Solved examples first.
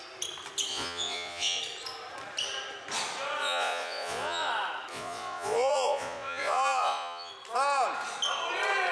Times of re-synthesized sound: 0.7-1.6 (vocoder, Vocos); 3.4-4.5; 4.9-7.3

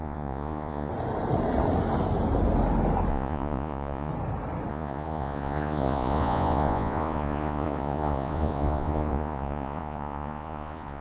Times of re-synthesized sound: 0.0-0.9 (vocoder, Vocos); 3.1-4.1; 4.7-11.0

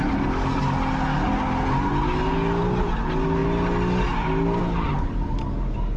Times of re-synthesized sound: none

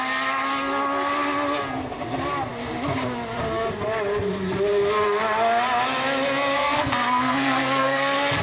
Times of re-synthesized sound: 6.5-8.4 (codec, SNAC)

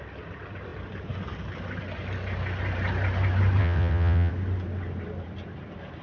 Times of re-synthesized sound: 3.6-4.3 (vocoder, WaveNeXt)

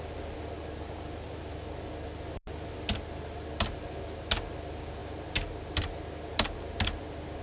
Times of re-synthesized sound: none

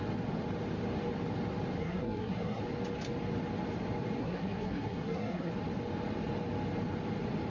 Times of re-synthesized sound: 1.8-2.6 (codec, SNAC); 4.2-5.5

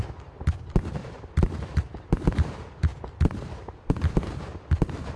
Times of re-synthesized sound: none